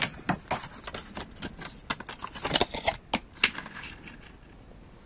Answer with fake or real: real